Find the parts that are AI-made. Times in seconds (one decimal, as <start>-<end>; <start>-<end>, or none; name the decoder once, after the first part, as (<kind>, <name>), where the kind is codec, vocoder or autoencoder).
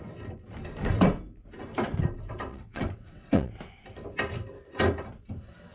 2.5-3.5 (vocoder, WaveNeXt)